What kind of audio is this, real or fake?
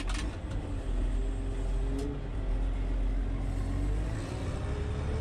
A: real